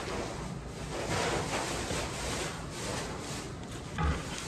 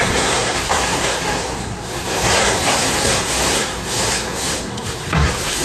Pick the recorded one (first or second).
first